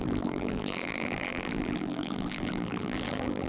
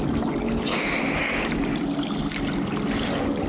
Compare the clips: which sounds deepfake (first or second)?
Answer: first